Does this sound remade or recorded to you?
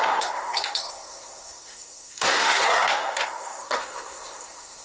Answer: remade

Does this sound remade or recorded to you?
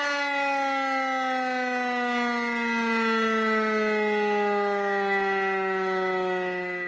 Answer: recorded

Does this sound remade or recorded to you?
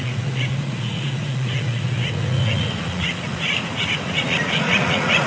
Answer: remade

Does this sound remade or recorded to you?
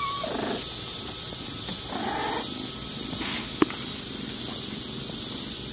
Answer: recorded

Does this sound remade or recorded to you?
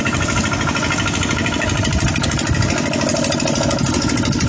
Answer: recorded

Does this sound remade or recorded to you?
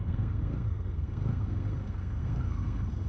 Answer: remade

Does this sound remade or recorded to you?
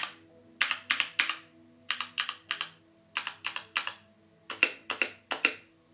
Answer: recorded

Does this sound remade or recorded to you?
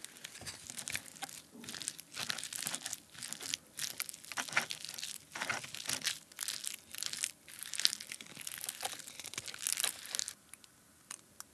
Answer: recorded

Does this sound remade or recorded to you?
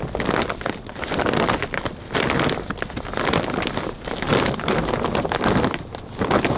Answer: recorded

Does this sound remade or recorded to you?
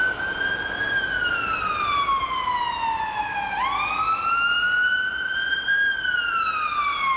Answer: recorded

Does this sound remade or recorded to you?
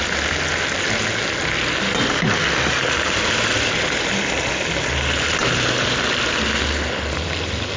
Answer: recorded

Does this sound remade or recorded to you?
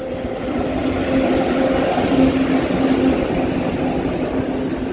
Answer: recorded